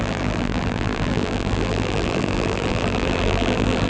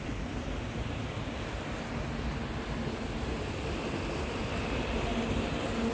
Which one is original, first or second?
second